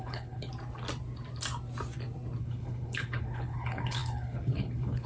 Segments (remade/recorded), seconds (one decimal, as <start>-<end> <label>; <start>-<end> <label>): 0.0-0.5 remade; 0.5-2.4 recorded; 2.4-5.1 remade